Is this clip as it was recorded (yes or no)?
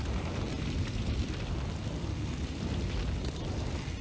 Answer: yes